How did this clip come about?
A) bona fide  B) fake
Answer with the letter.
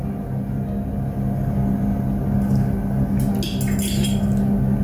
A